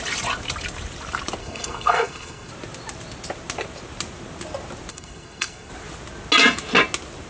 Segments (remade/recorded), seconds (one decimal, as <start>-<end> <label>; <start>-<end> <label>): 0.0-1.4 recorded; 1.4-2.5 remade; 2.5-4.9 recorded; 4.9-5.7 remade; 5.7-7.3 recorded